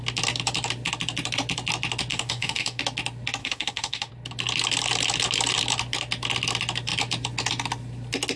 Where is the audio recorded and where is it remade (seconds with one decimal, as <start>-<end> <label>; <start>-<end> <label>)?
0.0-2.1 recorded; 2.1-2.8 remade; 2.8-3.4 recorded; 3.4-4.1 remade; 4.1-8.4 recorded